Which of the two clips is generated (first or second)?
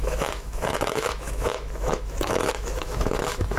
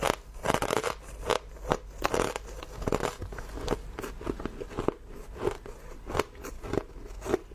first